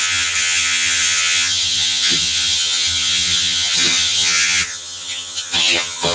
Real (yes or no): no